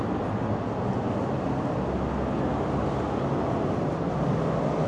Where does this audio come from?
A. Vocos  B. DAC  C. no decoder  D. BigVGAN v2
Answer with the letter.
C